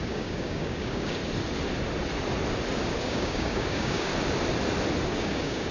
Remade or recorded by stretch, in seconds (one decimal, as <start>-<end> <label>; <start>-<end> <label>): 0.0-1.2 remade; 1.2-3.0 recorded; 3.0-4.1 remade; 4.1-5.1 recorded; 5.1-5.7 remade